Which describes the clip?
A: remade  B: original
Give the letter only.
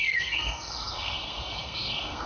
A